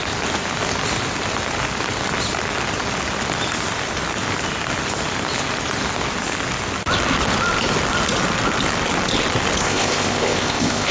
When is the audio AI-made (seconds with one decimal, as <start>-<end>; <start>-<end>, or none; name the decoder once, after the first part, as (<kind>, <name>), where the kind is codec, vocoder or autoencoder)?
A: 9.6-10.9 (codec, ZipCodec)